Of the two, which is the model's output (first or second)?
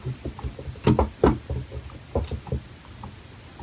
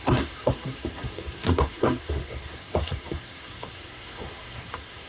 second